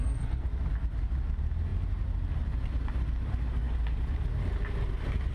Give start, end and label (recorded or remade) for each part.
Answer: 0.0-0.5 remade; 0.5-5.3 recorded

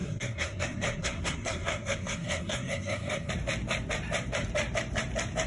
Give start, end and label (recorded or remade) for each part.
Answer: 0.0-3.3 remade; 3.3-5.5 recorded